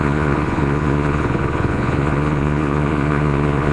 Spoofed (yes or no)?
yes